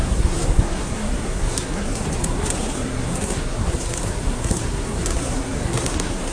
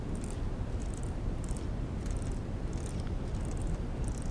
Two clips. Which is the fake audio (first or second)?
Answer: first